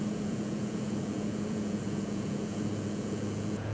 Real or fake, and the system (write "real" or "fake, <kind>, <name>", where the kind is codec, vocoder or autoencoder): fake, vocoder, Vocos